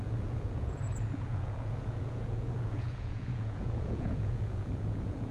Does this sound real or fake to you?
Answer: fake